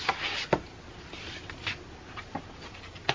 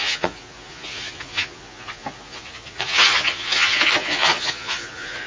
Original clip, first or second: first